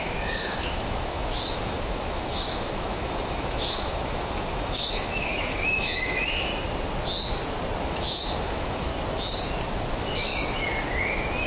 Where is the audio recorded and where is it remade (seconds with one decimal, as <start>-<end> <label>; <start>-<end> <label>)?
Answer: 0.0-6.5 remade; 6.5-7.9 recorded; 7.9-8.9 remade; 8.9-9.9 recorded; 9.9-10.3 remade; 10.3-11.5 recorded